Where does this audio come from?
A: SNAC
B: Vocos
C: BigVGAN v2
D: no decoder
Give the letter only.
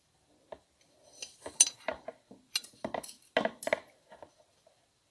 D